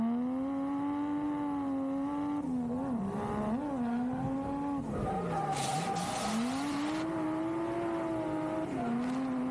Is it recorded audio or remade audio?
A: recorded